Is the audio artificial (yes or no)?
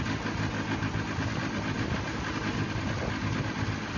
no